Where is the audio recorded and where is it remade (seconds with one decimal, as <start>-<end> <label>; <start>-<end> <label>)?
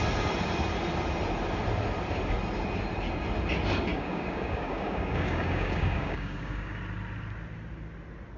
0.0-3.9 recorded; 3.9-6.8 remade; 6.8-8.4 recorded